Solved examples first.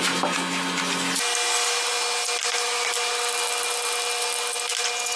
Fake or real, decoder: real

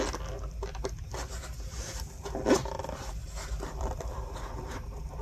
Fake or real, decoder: real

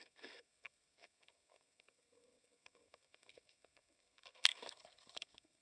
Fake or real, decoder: fake, codec, SNAC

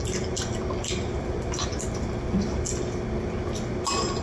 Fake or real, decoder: real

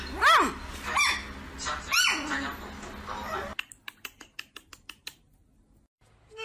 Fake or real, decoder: real